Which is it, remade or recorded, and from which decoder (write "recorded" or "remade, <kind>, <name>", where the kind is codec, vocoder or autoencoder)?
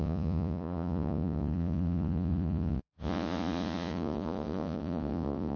remade, vocoder, Vocos